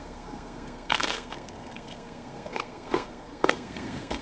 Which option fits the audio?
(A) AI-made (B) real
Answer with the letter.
A